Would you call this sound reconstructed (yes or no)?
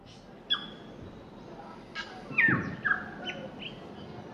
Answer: no